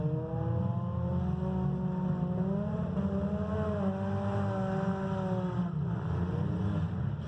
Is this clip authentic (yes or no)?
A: yes